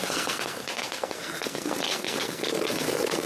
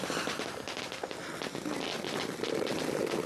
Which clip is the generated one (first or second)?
first